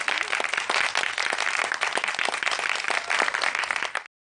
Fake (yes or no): no